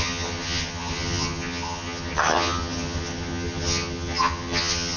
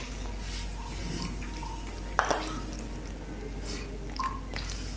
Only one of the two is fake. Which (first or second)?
first